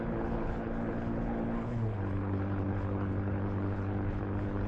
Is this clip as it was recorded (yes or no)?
no